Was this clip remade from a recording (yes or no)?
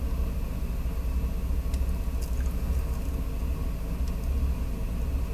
no